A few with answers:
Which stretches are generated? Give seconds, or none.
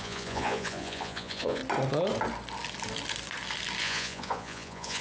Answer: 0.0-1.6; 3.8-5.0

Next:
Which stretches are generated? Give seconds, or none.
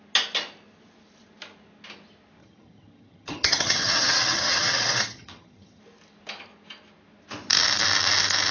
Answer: 2.4-5.8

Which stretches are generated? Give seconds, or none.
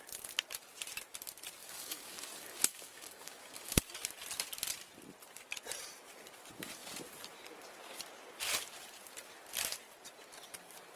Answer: 1.6-3.8